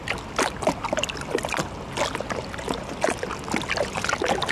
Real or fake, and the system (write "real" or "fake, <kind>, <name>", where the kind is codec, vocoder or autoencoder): real